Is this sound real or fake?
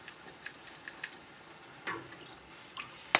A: real